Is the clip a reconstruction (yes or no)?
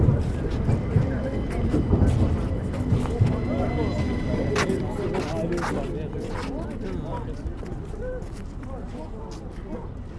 no